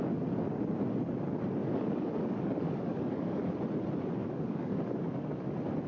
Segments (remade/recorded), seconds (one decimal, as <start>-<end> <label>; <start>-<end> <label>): 0.0-1.6 recorded; 1.6-3.5 remade; 3.5-4.2 recorded; 4.2-5.5 remade; 5.5-5.9 recorded